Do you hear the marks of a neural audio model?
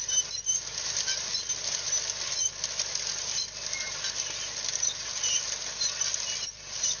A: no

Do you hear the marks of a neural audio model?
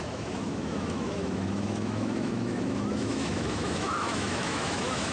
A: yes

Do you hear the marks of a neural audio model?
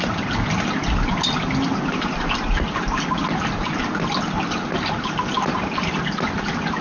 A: no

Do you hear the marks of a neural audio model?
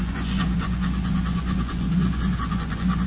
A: yes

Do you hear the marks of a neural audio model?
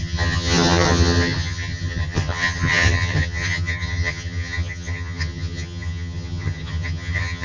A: yes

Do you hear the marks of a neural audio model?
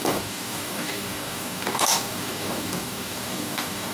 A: yes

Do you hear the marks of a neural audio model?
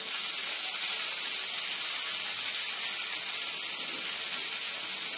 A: no